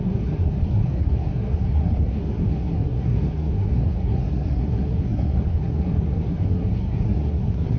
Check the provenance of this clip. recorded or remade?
remade